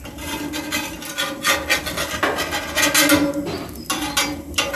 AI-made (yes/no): no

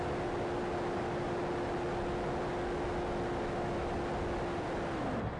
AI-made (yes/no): no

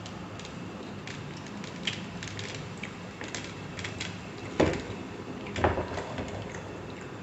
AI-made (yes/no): no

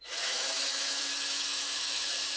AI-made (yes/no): yes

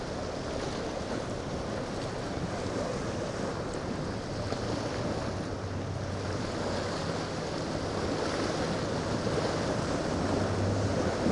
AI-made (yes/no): no